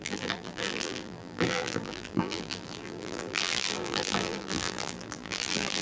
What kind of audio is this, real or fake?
fake